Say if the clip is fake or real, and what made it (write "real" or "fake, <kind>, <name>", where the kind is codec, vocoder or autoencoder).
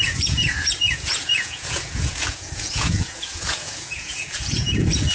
fake, vocoder, Vocos